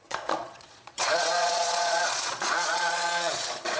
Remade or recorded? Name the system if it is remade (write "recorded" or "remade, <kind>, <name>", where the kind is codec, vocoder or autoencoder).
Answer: remade, vocoder, Vocos